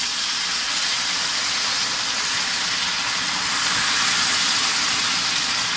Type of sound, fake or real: real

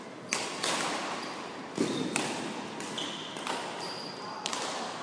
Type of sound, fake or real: real